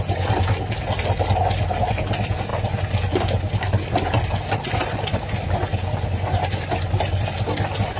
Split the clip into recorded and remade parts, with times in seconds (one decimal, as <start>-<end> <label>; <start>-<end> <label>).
0.0-8.0 recorded